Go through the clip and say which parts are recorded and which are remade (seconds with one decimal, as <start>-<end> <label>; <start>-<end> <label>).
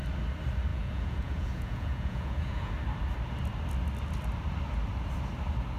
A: 0.0-0.7 recorded; 0.7-2.7 remade; 2.7-5.8 recorded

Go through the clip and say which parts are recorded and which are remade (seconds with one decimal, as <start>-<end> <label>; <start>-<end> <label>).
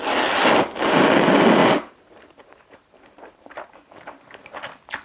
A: 0.0-1.6 recorded; 1.6-4.2 remade; 4.2-5.0 recorded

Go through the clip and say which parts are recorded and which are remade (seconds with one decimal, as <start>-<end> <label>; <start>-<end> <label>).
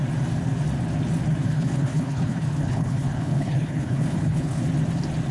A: 0.0-1.4 recorded; 1.4-4.6 remade; 4.6-5.3 recorded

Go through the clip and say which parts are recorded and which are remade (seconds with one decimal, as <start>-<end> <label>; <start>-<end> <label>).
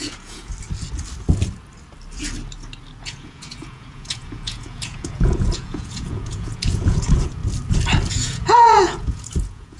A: 0.0-0.5 remade; 0.5-3.0 recorded; 3.0-7.4 remade; 7.4-8.1 recorded; 8.1-9.8 remade